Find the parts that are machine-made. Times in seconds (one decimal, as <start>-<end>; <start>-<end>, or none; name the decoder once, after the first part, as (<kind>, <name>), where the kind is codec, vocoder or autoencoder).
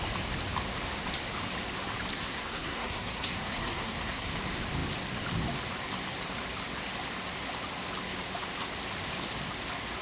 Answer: 2.1-4.3 (codec, SNAC)